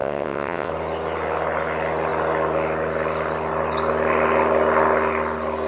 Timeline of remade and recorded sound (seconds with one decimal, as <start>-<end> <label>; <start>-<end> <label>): 0.0-0.7 remade; 0.7-5.7 recorded